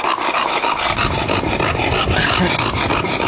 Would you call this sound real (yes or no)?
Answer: yes